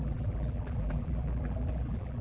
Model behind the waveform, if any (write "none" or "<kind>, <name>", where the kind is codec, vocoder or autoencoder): vocoder, BigVGAN v2